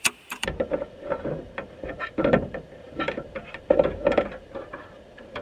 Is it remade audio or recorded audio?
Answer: remade